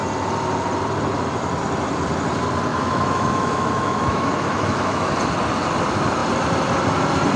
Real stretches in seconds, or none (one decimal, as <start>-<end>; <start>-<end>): 0.0-2.7; 5.1-7.4